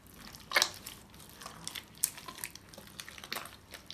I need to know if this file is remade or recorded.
recorded